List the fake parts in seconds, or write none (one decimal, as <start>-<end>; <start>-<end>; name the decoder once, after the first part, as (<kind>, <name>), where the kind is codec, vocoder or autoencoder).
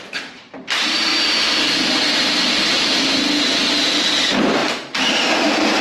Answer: 0.0-1.1 (vocoder, BigVGAN v2); 4.0-5.8